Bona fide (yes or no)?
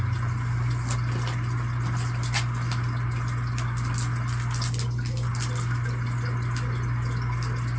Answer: yes